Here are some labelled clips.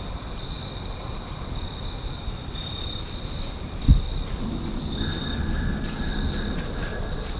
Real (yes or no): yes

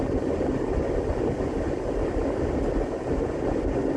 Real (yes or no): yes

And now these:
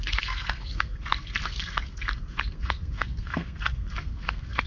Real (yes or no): no